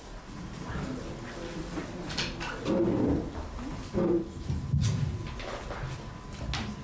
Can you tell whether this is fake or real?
real